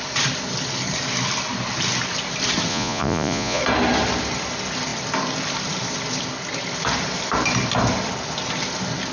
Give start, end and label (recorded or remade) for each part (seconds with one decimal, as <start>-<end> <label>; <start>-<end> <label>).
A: 0.0-2.7 recorded; 2.7-3.6 remade; 3.6-9.1 recorded